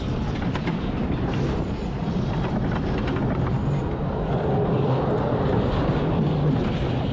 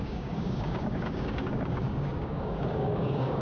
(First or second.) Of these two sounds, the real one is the first